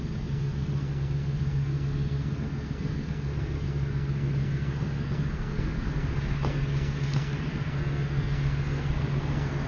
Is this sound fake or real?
fake